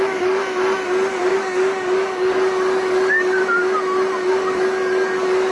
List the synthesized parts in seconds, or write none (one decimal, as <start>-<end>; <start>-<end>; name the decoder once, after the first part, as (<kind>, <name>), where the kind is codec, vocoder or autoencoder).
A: 0.0-0.4 (codec, DAC); 1.3-3.4; 4.3-5.5